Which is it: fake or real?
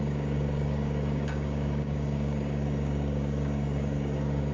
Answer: fake